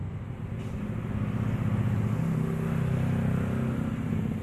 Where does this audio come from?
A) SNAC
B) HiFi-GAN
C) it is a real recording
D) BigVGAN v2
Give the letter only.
C